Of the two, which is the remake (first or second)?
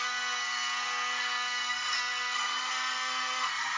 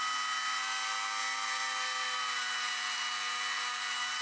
first